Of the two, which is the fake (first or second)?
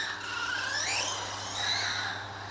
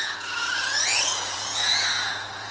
second